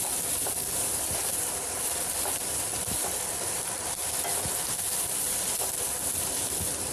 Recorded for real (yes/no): no